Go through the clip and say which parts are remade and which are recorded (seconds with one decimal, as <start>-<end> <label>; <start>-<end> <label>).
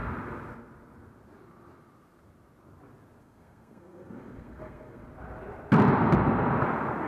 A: 0.0-3.2 recorded; 3.2-5.0 remade; 5.0-7.1 recorded